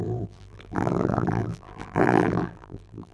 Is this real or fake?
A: fake